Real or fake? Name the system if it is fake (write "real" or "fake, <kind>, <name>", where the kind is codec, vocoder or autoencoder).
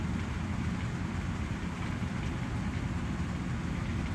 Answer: real